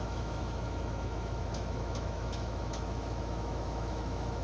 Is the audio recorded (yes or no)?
no